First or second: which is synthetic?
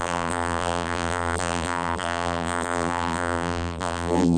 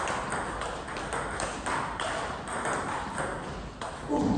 first